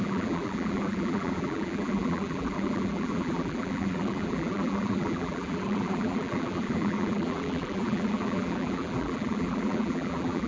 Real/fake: fake